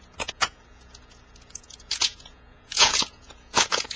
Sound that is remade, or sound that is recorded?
remade